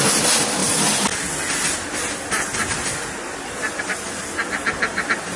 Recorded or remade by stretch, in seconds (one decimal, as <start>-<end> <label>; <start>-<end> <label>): 0.0-5.4 recorded